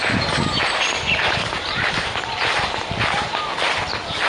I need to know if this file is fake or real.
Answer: real